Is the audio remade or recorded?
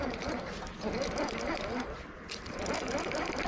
recorded